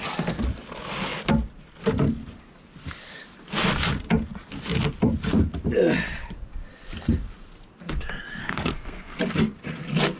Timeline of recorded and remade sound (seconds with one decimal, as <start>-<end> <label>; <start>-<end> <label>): 0.0-8.4 recorded; 8.4-9.2 remade; 9.2-10.2 recorded

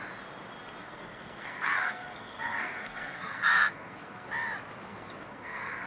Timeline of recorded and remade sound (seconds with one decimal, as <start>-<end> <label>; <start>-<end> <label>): 0.0-0.8 recorded; 0.8-4.3 remade; 4.3-4.9 recorded; 4.9-5.9 remade

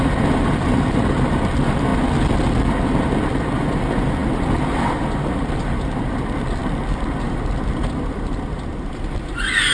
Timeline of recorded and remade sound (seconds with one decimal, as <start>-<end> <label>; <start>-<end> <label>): 0.0-9.7 recorded

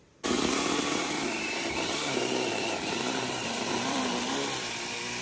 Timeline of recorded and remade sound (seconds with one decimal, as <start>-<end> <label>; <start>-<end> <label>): 0.0-1.0 recorded; 1.0-4.1 remade; 4.1-5.2 recorded